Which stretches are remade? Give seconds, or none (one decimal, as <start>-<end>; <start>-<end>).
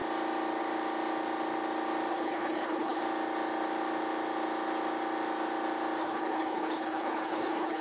2.1-3.0; 6.0-7.8